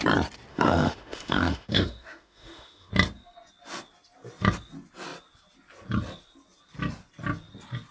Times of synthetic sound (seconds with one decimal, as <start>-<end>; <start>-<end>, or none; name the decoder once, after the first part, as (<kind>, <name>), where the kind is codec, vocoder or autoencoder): 0.5-2.9 (autoencoder, DAC-VAE)